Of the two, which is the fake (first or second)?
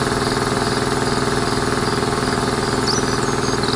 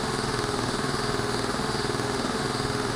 second